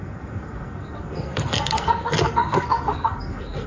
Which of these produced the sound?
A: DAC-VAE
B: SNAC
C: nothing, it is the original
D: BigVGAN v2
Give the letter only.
B